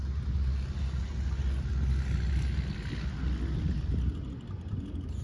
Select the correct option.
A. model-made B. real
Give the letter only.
B